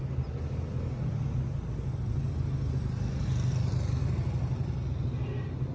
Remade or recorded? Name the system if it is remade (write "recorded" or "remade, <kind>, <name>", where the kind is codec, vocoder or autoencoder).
recorded